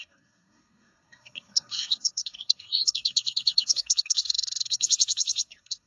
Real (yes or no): no